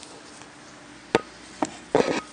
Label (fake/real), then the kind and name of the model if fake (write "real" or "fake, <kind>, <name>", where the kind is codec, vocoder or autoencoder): real